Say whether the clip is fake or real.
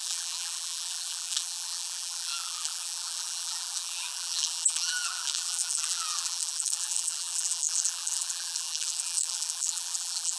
fake